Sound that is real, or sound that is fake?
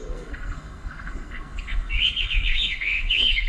fake